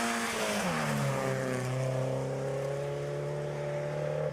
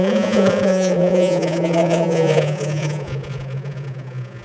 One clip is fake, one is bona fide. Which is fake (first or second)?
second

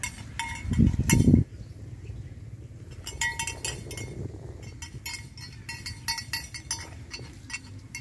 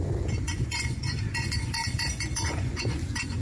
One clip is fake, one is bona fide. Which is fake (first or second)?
second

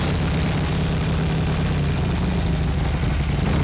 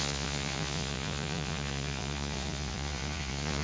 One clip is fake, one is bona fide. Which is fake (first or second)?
second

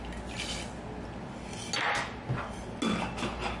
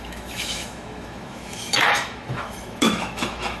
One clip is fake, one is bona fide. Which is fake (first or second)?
second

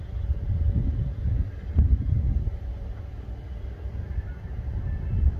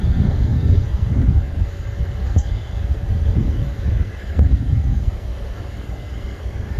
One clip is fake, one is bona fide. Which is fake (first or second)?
second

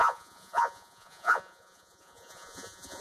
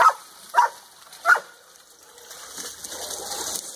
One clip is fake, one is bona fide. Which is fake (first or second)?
first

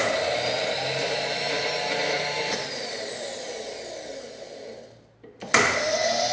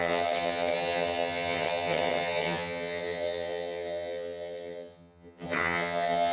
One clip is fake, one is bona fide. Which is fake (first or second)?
second